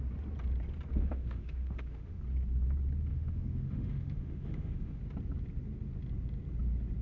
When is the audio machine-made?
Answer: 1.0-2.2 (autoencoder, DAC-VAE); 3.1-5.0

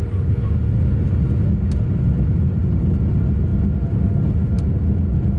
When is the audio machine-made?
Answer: none